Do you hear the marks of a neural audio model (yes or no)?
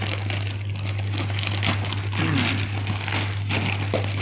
no